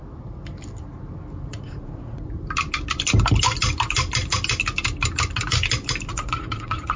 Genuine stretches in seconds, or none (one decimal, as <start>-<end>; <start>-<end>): 0.0-1.5; 2.3-6.1